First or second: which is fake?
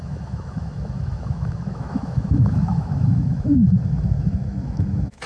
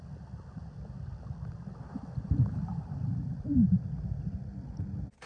first